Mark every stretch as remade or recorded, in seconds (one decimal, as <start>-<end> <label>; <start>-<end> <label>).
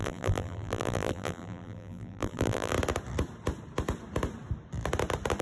0.0-2.7 remade; 2.7-5.4 recorded